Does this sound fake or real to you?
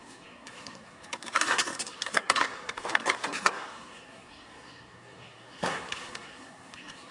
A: fake